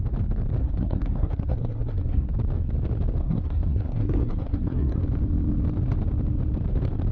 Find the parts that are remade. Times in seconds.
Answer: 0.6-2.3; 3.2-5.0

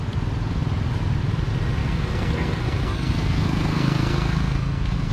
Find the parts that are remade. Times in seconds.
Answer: 1.8-5.1

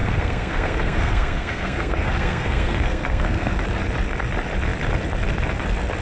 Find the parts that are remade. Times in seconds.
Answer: 0.0-3.6

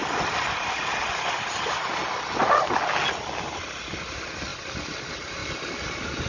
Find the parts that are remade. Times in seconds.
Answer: none

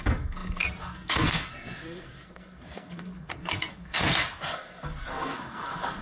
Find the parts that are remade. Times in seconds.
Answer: 0.0-6.0